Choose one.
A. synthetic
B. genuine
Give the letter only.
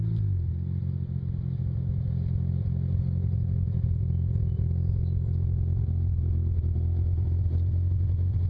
B